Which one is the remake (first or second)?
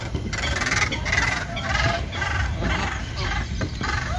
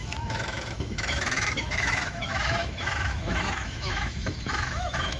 second